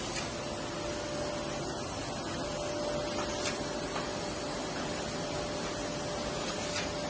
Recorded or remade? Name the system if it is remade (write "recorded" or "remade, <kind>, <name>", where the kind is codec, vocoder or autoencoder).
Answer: recorded